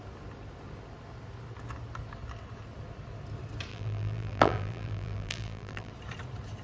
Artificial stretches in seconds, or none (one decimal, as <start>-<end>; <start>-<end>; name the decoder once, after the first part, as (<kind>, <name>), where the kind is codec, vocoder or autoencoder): 3.7-5.9 (vocoder, BigVGAN v2)